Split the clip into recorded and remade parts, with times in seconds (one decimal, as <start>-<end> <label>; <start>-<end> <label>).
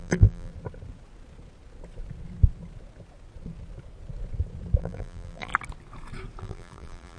0.0-0.5 remade; 0.5-4.8 recorded; 4.8-5.5 remade; 5.5-6.4 recorded; 6.4-7.2 remade